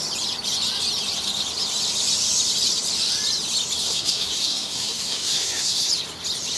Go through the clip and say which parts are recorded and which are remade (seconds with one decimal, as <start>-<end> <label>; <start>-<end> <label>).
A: 0.0-3.8 recorded; 3.8-5.9 remade; 5.9-6.6 recorded